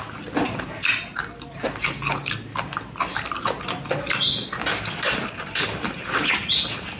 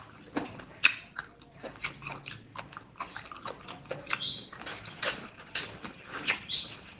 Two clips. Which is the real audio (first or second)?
first